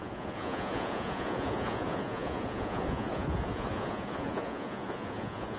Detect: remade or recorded remade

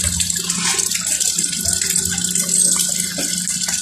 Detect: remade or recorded recorded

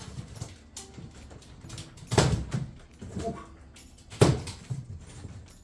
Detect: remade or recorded recorded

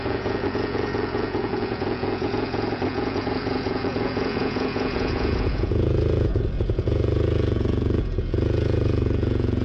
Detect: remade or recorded remade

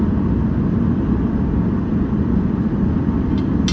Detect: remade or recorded recorded